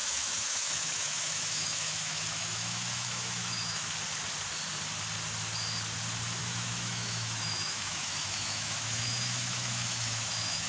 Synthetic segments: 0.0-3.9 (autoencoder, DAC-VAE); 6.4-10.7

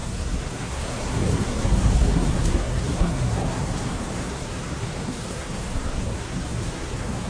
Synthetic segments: 0.0-7.3 (codec, SNAC)

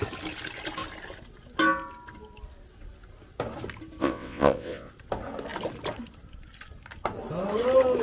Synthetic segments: 4.0-4.9 (vocoder, WaveNeXt)